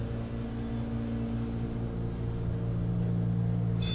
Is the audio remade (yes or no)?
no